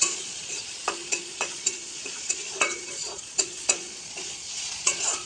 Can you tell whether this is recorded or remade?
remade